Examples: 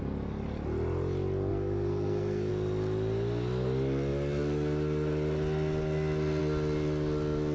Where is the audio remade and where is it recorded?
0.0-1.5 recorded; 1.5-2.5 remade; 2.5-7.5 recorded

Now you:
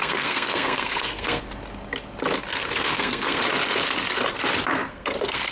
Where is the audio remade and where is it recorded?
0.0-1.4 remade; 1.4-2.5 recorded; 2.5-3.4 remade; 3.4-4.7 recorded; 4.7-5.5 remade